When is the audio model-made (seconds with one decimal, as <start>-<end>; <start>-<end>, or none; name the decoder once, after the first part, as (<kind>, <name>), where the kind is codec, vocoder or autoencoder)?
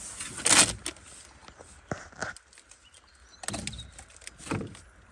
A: none